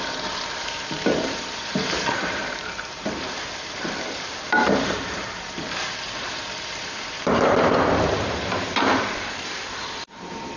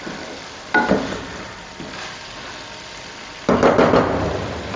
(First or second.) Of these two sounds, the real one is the second